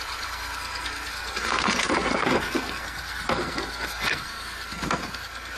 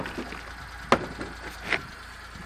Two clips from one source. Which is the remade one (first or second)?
first